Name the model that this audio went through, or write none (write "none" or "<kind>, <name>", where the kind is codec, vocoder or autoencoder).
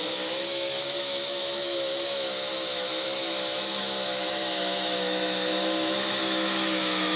autoencoder, DAC-VAE